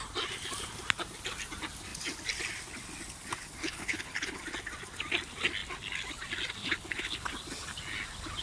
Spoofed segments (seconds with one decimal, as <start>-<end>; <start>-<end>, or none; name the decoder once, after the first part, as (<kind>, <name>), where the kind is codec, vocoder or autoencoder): 3.6-4.4 (codec, HILCodec); 6.6-7.3